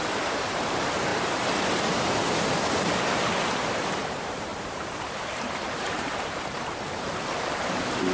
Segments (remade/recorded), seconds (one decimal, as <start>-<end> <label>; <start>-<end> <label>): 0.0-1.1 remade; 1.1-3.7 recorded; 3.7-8.1 remade